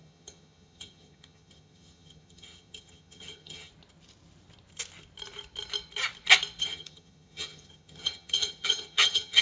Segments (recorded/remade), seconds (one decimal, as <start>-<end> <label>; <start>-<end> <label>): 0.0-3.7 remade; 3.7-6.6 recorded; 6.6-9.4 remade